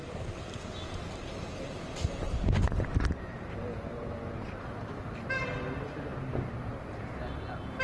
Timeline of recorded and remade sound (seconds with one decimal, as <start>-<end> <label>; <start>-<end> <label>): 0.0-4.7 remade; 4.7-6.1 recorded; 6.1-6.8 remade; 6.8-7.8 recorded